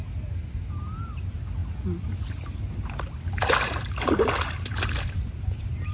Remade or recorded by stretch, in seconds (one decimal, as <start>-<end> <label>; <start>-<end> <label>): 0.0-5.9 recorded